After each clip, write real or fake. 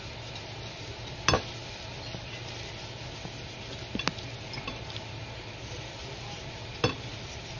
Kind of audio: real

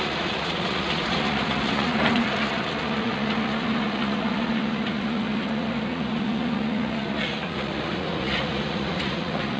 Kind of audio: fake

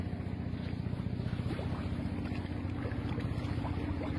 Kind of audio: real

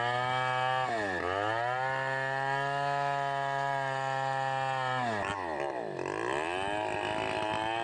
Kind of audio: real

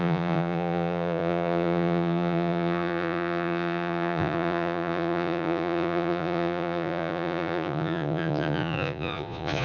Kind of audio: fake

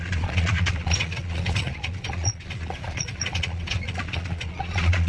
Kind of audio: fake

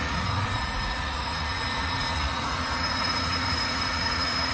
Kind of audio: fake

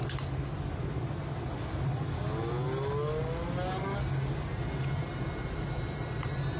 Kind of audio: real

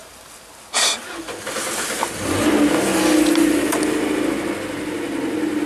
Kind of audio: real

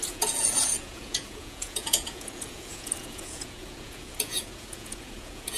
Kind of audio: fake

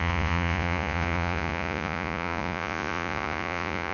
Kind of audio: fake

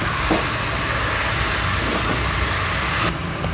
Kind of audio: real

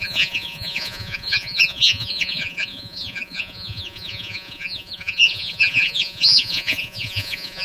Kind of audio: fake